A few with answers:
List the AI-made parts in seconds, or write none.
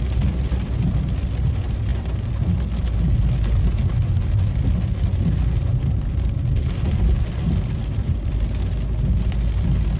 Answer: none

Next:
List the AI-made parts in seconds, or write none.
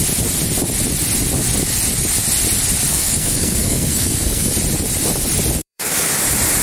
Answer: 2.9-4.5; 5.6-6.1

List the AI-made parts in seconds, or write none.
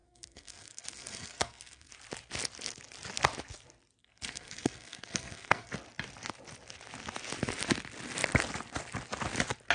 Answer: 0.0-1.9; 4.0-5.7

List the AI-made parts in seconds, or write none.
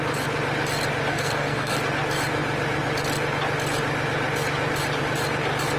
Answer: 1.1-1.8